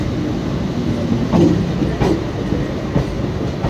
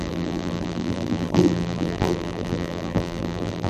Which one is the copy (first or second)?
second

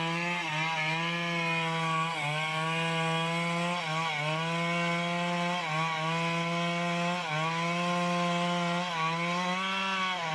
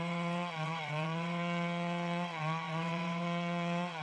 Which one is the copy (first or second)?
second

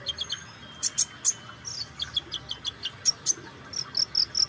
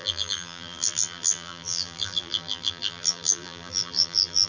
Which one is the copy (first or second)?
second